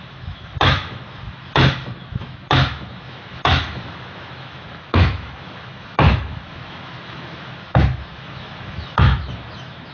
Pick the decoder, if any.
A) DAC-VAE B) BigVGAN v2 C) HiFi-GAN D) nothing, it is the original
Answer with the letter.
A